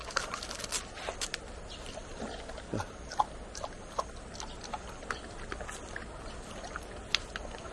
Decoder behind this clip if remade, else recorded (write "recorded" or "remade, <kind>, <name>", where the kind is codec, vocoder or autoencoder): recorded